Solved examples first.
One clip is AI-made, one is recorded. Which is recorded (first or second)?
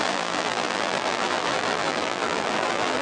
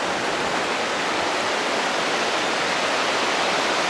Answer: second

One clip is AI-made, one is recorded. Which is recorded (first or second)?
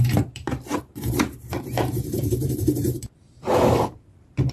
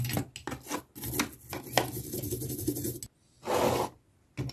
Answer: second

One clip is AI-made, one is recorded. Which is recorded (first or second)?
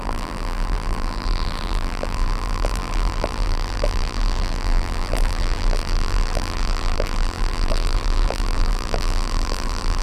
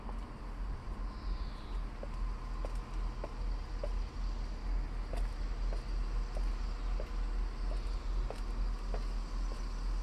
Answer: second